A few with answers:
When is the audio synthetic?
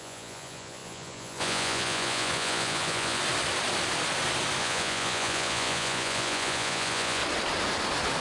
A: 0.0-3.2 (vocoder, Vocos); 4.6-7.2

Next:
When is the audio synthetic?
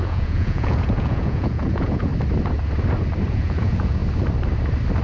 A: 0.0-2.1 (vocoder, Vocos); 3.3-4.0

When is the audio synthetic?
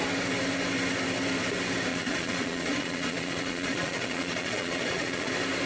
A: 1.9-5.3 (vocoder, Vocos)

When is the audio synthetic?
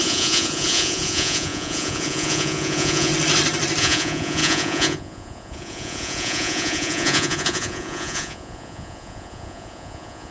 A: 0.0-3.1 (vocoder, Vocos); 3.8-10.3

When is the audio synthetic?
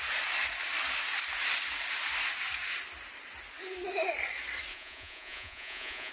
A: 4.7-6.1 (vocoder, Vocos)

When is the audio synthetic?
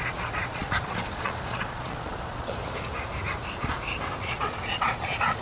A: 0.0-2.6 (vocoder, Vocos); 4.2-5.4